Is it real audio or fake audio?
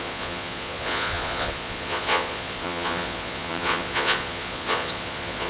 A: fake